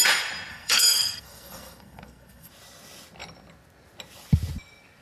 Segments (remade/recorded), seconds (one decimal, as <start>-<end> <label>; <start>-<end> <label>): 0.0-0.5 recorded; 0.5-2.5 remade; 2.5-5.0 recorded